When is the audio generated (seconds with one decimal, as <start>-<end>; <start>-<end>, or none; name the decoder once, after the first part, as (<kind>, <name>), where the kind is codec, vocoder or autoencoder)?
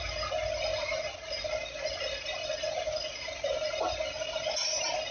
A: none